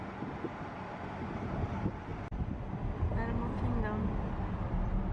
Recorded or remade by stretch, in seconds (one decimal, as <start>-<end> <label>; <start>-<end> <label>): 0.0-5.1 recorded